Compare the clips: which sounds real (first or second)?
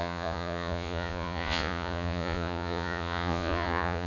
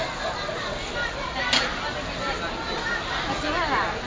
second